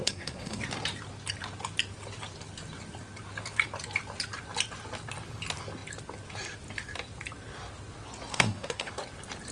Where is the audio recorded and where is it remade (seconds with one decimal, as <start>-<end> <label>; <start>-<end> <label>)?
0.0-0.6 remade; 0.6-8.3 recorded; 8.3-8.9 remade; 8.9-9.5 recorded